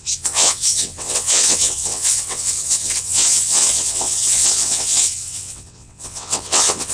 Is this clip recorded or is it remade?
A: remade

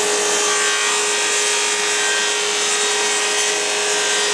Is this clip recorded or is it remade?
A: recorded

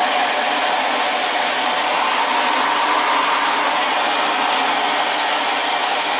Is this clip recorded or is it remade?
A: recorded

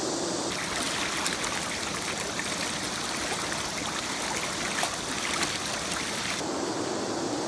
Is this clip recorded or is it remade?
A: recorded